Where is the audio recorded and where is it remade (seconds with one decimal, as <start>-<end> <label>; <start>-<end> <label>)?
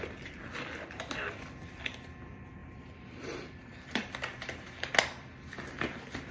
0.0-2.6 recorded; 2.6-4.1 remade; 4.1-6.3 recorded